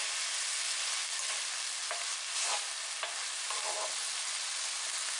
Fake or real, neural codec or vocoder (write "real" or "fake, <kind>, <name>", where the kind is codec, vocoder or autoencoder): real